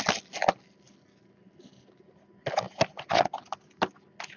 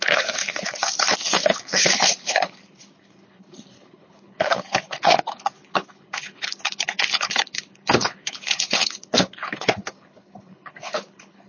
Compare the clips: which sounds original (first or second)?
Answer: first